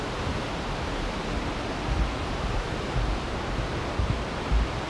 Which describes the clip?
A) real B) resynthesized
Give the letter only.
A